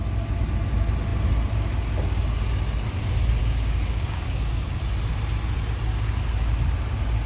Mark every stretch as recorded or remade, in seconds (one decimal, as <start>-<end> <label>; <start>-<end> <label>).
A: 0.0-3.4 recorded; 3.4-4.8 remade; 4.8-7.3 recorded